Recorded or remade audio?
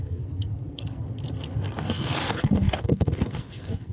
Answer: remade